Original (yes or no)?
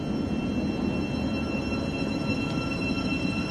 yes